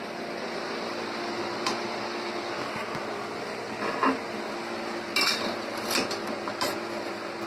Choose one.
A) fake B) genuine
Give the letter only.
B